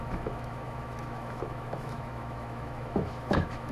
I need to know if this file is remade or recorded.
remade